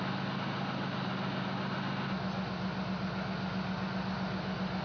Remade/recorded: recorded